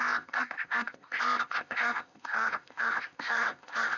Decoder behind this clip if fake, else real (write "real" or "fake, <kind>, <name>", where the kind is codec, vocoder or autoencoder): fake, codec, ZipCodec